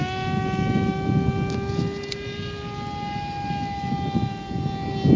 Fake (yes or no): no